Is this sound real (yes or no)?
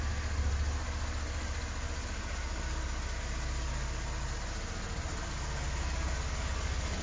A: yes